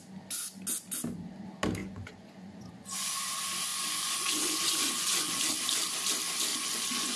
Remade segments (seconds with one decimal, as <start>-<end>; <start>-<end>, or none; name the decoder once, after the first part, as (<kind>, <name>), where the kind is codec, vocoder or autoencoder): 1.8-3.3 (vocoder, Vocos); 3.7-5.4; 6.5-7.2

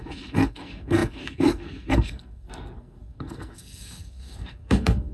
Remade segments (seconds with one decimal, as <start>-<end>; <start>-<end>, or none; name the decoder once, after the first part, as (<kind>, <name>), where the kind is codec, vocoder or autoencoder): 0.0-5.1 (codec, SNAC)

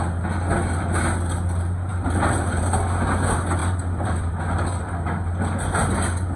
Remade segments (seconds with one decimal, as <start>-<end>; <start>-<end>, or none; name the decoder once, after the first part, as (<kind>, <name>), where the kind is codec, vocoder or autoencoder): 1.9-2.6 (vocoder, BigVGAN v2); 3.6-4.9

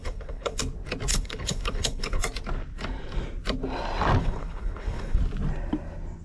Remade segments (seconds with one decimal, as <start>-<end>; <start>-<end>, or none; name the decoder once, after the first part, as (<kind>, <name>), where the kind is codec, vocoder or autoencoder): 0.0-0.6 (codec, HILCodec); 1.1-2.2; 4.2-5.2

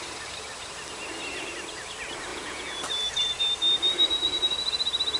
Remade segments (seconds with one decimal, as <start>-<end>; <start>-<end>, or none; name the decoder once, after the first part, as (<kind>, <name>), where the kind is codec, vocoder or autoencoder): 2.3-2.8 (vocoder, Vocos)